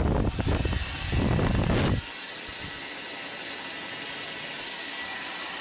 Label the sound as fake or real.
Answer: real